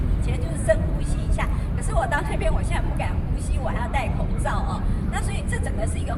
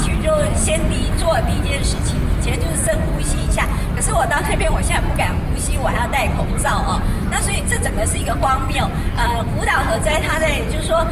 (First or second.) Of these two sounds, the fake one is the first